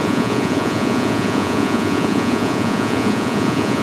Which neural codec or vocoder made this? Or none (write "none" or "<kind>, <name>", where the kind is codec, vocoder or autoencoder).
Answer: vocoder, Vocos